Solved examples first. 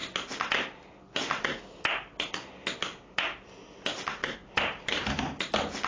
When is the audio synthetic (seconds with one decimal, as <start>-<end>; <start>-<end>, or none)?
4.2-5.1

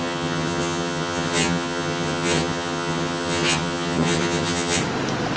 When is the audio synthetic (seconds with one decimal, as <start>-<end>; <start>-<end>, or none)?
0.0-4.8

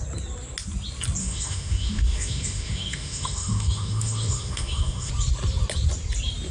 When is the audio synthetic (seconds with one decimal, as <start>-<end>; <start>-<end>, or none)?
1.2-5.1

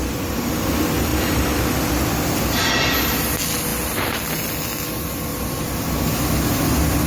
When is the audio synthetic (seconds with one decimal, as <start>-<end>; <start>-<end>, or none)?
0.0-0.6; 1.1-1.9; 5.3-6.0